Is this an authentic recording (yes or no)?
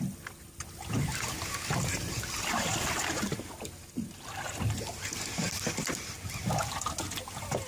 yes